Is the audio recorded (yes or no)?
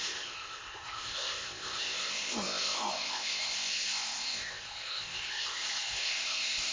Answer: no